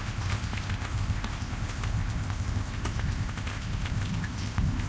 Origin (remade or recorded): remade